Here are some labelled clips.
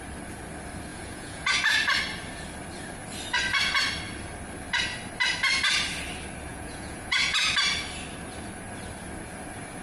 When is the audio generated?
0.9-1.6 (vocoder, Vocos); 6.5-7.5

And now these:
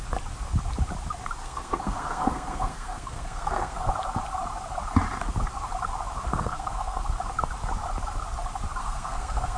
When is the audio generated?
1.4-3.9 (codec, SNAC); 6.3-7.0; 8.8-9.6

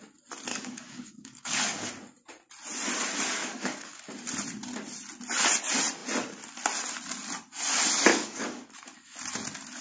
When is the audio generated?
0.5-1.9 (codec, DAC); 3.4-4.0; 8.1-8.7

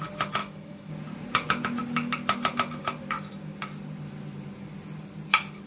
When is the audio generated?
0.4-0.9 (autoencoder, DAC-VAE)